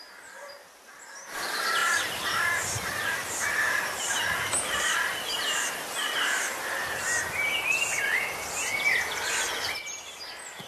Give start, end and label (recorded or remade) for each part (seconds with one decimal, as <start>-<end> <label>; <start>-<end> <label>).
0.0-10.7 recorded